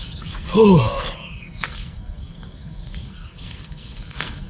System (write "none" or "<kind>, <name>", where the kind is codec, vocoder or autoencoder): codec, SNAC